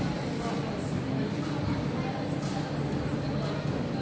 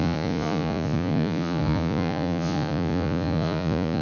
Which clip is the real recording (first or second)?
first